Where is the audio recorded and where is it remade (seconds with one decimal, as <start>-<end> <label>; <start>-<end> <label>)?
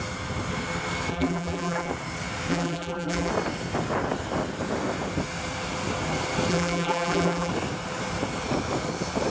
0.0-1.1 recorded; 1.1-1.9 remade; 1.9-2.5 recorded; 2.5-3.3 remade; 3.3-6.5 recorded; 6.5-7.5 remade; 7.5-9.3 recorded